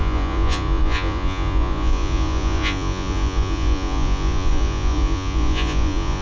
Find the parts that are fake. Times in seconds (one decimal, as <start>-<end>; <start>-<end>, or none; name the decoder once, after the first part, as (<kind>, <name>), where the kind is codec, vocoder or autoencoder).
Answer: 0.0-6.2 (vocoder, Vocos)